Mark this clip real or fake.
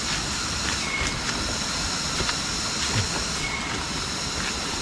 real